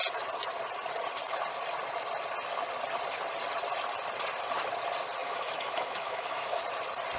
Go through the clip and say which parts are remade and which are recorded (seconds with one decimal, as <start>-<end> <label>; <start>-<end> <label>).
0.0-5.2 recorded; 5.2-6.6 remade; 6.6-7.2 recorded